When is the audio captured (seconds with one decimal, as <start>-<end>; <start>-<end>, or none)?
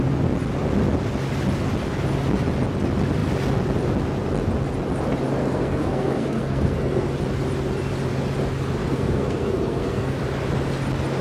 0.0-5.4; 7.1-8.8; 10.2-11.2